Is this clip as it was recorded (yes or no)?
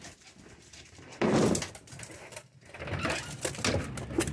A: yes